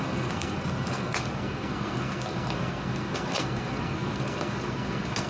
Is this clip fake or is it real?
fake